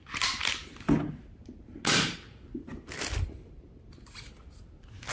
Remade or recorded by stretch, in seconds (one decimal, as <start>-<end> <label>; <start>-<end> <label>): 0.0-5.1 recorded

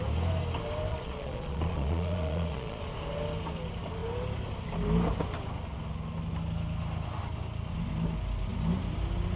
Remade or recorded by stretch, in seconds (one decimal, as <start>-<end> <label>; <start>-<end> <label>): 0.0-0.9 recorded; 0.9-2.8 remade; 2.8-9.4 recorded